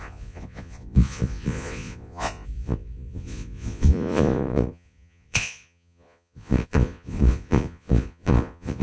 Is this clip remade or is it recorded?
remade